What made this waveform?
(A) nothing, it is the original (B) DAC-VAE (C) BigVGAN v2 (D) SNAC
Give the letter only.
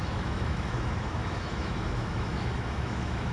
B